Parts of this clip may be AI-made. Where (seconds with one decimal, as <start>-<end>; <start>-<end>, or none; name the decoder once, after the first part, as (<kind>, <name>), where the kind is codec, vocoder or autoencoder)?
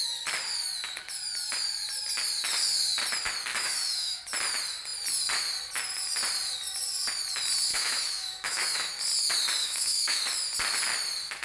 3.5-4.2 (autoencoder, DAC-VAE); 7.7-8.9; 9.6-10.2